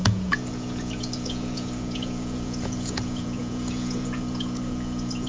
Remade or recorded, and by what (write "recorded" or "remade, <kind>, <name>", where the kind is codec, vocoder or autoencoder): remade, vocoder, Vocos